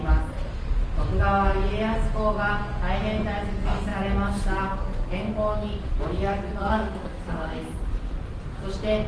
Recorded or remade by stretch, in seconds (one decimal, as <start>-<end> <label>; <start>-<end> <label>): 0.0-6.6 recorded; 6.6-7.8 remade; 7.8-9.1 recorded